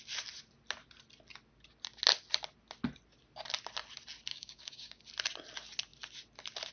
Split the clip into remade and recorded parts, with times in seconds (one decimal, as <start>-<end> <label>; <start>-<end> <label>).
0.0-4.3 recorded; 4.3-5.0 remade; 5.0-6.7 recorded